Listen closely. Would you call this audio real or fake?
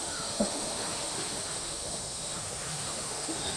fake